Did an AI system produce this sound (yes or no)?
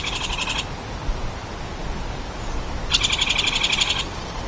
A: no